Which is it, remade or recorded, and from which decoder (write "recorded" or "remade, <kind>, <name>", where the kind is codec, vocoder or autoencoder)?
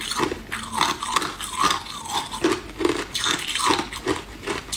recorded